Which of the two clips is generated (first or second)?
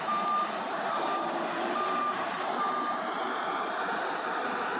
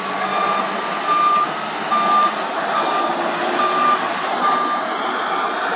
first